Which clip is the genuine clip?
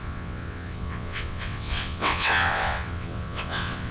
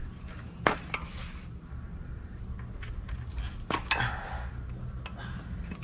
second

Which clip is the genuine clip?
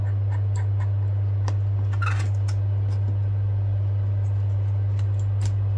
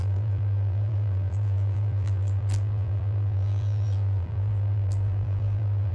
first